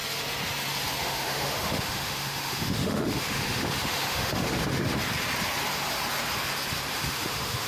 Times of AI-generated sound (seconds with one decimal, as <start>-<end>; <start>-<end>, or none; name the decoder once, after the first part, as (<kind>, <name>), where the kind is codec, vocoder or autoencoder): 1.0-5.0 (autoencoder, DAC-VAE); 6.9-7.7